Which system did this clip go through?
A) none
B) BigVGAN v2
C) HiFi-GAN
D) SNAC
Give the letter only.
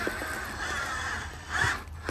A